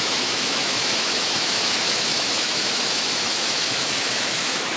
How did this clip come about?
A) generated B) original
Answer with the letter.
A